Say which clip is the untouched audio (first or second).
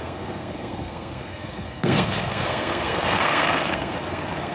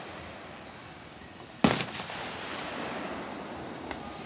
second